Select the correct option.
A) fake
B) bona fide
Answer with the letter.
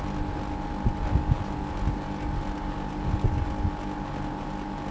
B